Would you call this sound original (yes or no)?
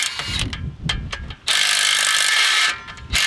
yes